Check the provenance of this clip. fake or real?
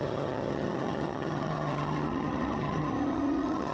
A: fake